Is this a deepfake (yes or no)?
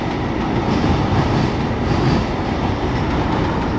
no